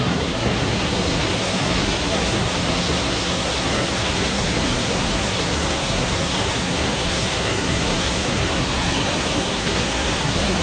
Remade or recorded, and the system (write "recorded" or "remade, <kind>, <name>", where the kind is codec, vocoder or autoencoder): remade, codec, SNAC